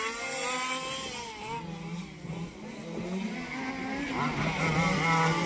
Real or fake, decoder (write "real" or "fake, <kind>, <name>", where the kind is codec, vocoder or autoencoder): real